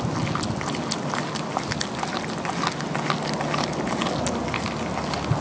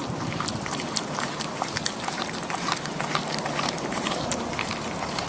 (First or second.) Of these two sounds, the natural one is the first